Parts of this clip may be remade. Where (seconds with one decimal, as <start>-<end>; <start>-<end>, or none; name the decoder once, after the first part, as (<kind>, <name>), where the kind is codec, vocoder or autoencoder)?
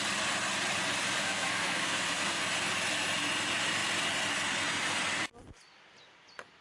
1.2-2.4 (codec, SNAC)